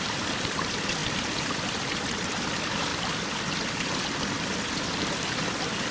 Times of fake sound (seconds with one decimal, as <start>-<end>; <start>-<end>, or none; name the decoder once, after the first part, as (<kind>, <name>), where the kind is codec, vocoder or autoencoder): 2.9-3.5 (vocoder, BigVGAN v2)